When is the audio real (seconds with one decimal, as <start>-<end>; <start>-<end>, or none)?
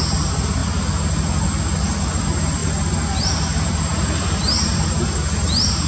0.6-2.2; 2.6-3.2